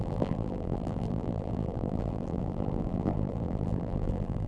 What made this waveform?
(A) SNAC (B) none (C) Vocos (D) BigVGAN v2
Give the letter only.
D